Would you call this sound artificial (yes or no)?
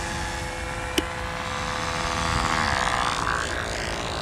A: no